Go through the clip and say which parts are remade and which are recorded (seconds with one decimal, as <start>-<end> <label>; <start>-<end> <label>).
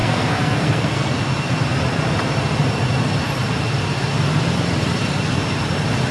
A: 0.0-1.2 remade; 1.2-6.1 recorded